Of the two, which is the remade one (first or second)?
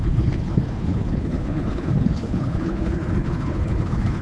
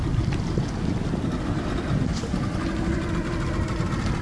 first